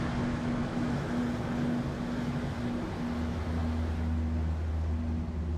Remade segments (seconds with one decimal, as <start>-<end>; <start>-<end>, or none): 0.6-1.2